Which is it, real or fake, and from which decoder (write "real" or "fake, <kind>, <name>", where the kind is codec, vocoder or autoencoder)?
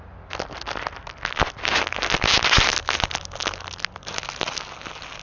real